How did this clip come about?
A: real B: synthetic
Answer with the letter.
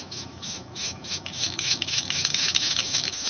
B